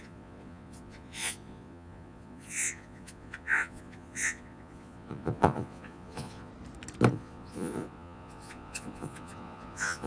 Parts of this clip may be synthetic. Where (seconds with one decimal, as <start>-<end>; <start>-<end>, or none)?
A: 0.0-6.5; 7.1-10.1